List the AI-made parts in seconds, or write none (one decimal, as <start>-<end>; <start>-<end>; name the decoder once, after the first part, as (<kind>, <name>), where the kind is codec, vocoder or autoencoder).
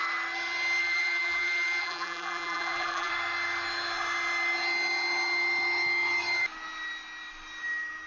0.8-3.1 (vocoder, BigVGAN v2)